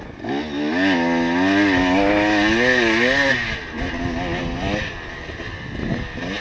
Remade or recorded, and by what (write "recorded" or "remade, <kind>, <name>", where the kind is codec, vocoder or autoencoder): recorded